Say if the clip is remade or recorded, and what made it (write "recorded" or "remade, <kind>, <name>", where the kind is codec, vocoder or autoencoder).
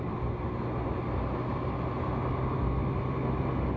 recorded